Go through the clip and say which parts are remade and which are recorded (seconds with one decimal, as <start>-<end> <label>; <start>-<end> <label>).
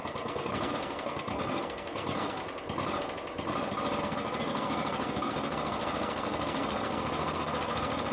0.0-2.4 remade; 2.4-4.0 recorded; 4.0-8.1 remade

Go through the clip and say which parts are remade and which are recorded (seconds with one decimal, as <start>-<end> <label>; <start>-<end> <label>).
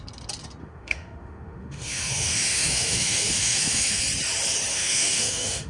0.0-0.6 recorded; 0.6-4.0 remade; 4.0-4.7 recorded; 4.7-5.7 remade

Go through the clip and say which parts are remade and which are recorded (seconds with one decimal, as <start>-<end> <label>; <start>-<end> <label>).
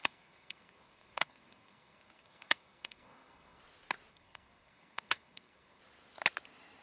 0.0-3.6 remade; 3.6-4.1 recorded; 4.1-5.8 remade; 5.8-6.8 recorded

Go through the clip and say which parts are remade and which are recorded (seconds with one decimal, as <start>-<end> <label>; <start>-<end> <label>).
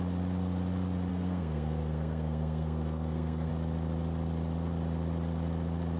0.0-1.1 recorded; 1.1-3.5 remade; 3.5-6.0 recorded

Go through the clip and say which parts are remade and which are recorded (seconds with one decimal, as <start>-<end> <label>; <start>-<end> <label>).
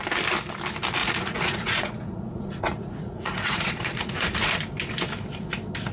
0.0-1.0 recorded; 1.0-4.5 remade; 4.5-5.9 recorded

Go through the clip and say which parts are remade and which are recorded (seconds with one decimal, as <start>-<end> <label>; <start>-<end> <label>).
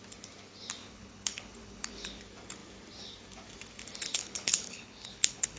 0.0-0.8 recorded; 0.8-2.2 remade; 2.2-4.1 recorded; 4.1-5.6 remade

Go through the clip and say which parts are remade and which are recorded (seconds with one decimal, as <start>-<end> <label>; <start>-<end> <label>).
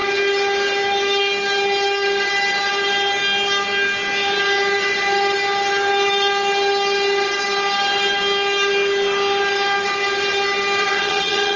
0.0-10.8 recorded; 10.8-11.6 remade